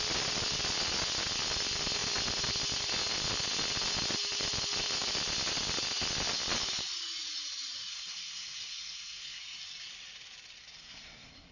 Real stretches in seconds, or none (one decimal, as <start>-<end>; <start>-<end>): 0.0-7.9; 9.4-10.6